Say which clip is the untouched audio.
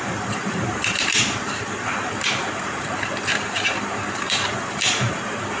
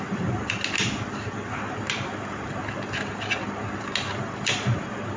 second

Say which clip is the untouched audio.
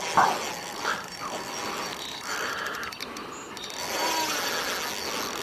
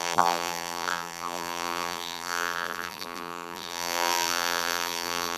first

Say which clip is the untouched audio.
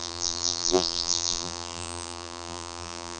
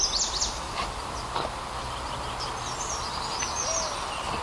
second